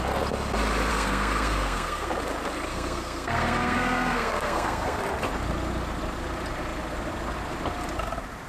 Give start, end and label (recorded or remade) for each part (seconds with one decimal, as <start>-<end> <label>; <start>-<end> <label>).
0.0-0.9 recorded; 0.9-2.1 remade; 2.1-2.7 recorded; 2.7-5.0 remade; 5.0-8.5 recorded